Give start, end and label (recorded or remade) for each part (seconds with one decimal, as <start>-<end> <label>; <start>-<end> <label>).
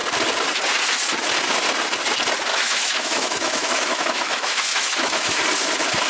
0.0-2.5 recorded; 2.5-5.4 remade; 5.4-6.1 recorded